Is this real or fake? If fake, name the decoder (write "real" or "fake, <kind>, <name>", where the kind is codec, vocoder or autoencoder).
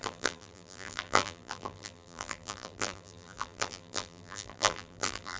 fake, vocoder, BigVGAN v2